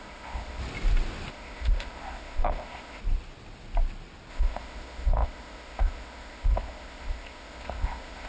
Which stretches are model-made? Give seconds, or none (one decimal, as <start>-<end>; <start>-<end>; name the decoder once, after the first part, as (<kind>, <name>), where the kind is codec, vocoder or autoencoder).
0.0-0.6 (codec, ZipCodec); 1.3-3.0; 4.3-8.3